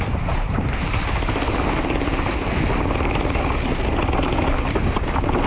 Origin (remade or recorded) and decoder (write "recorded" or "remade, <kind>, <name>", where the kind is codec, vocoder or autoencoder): recorded